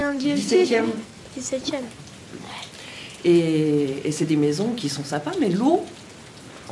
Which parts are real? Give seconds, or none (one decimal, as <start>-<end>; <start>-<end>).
1.2-6.7